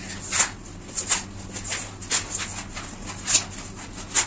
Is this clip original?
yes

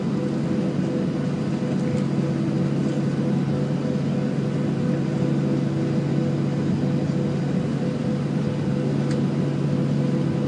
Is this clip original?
yes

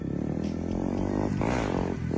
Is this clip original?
yes